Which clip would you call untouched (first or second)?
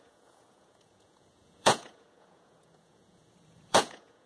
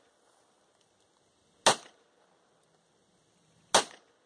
second